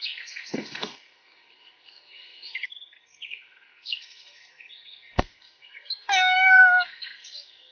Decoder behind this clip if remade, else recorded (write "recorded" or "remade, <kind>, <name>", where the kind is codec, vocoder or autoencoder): remade, codec, SNAC